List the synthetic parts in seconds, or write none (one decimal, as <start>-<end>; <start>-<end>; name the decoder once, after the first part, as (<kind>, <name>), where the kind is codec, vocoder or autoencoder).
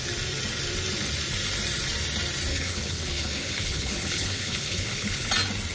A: 2.5-5.3 (codec, HILCodec)